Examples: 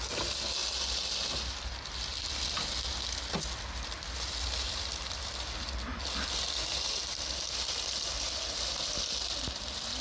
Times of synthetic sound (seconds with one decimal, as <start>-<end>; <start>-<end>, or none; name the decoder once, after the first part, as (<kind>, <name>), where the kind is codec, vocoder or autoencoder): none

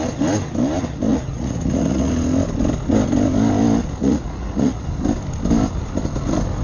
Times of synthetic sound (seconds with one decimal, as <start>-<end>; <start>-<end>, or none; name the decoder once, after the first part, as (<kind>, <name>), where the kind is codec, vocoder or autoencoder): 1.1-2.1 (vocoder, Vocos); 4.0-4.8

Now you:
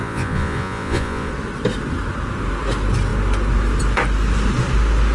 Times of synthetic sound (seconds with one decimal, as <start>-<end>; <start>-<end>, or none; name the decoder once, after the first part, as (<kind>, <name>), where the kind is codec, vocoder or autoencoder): 0.0-1.3 (vocoder, Vocos)